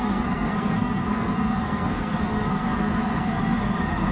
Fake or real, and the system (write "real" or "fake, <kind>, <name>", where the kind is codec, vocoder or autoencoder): fake, codec, SNAC